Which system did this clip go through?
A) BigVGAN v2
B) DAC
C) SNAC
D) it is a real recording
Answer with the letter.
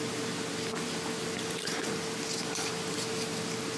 D